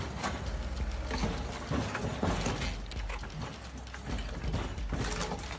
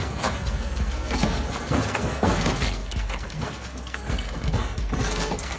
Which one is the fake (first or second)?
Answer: second